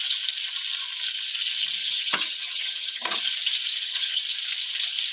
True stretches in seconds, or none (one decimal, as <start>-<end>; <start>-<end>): 0.0-1.8; 3.2-3.7; 4.2-5.1

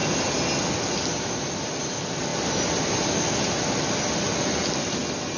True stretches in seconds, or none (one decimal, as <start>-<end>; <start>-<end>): 0.0-5.4

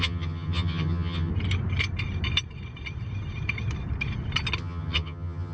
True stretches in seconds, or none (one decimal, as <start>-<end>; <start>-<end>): 1.3-4.6

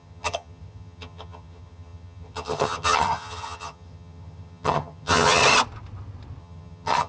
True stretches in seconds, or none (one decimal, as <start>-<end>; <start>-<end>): 5.4-6.4

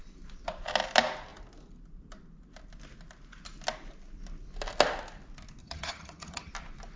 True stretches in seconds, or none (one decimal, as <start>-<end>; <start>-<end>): 0.0-5.6; 6.5-7.0

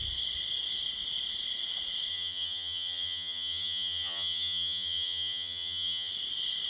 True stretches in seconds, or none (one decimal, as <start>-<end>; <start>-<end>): 0.0-2.1; 6.1-6.7

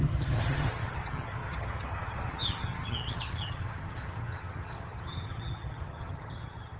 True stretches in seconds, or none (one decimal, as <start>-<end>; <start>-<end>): none